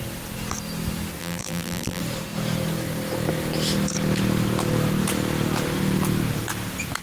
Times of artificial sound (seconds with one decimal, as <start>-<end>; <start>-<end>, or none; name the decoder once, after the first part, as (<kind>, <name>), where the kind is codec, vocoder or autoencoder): 1.2-2.0 (vocoder, BigVGAN v2)

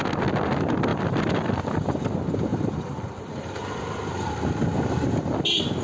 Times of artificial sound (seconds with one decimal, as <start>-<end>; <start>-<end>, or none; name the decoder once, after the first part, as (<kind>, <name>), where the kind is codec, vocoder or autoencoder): 0.9-1.6 (vocoder, BigVGAN v2); 2.5-4.3

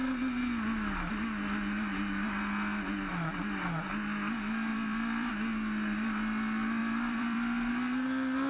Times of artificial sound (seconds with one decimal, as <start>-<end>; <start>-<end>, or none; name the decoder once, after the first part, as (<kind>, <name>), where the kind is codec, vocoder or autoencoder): 4.7-5.3 (vocoder, BigVGAN v2); 6.8-7.7

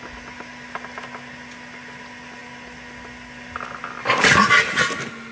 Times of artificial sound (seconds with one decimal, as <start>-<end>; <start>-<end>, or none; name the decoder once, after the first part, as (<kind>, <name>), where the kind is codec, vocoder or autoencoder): none

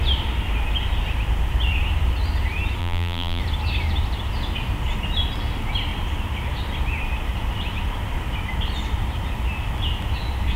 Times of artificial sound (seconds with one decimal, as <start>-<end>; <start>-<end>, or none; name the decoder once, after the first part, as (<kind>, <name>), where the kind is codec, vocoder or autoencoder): 2.8-3.4 (vocoder, BigVGAN v2)

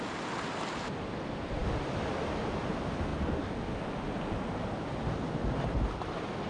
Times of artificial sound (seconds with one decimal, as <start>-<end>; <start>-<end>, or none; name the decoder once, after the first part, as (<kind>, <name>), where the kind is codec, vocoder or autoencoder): none